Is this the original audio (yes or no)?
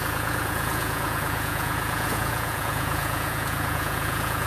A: no